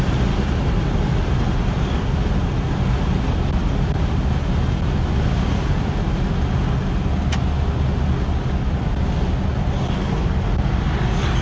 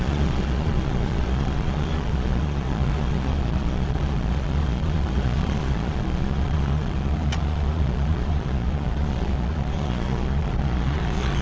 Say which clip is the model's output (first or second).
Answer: second